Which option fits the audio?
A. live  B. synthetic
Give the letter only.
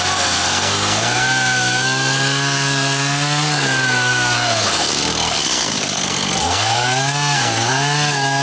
B